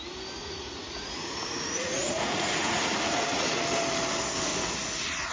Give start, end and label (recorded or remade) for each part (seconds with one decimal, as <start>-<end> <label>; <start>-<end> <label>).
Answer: 0.0-0.4 recorded; 0.4-3.6 remade; 3.6-4.5 recorded; 4.5-5.3 remade